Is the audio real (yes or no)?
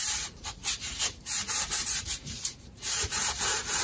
no